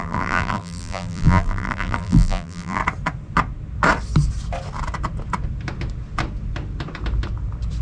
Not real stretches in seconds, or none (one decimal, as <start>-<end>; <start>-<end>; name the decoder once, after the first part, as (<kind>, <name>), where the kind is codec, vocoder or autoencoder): 0.0-2.8 (vocoder, BigVGAN v2)